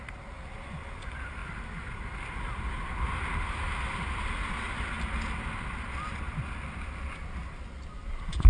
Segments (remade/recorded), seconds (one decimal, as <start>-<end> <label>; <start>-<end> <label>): 0.0-8.5 recorded